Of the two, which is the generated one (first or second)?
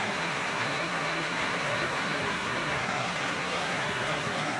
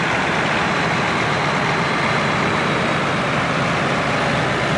first